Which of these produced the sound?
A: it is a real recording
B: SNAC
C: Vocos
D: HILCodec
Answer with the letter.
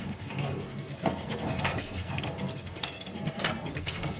B